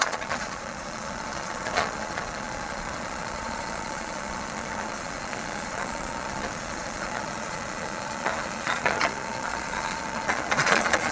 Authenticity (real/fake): fake